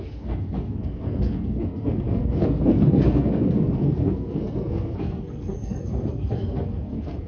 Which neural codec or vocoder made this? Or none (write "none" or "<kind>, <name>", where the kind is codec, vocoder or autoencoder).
codec, SNAC